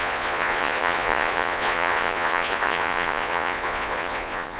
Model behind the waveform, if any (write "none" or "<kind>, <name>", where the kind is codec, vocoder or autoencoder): vocoder, Vocos